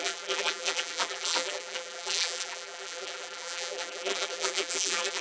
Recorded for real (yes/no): no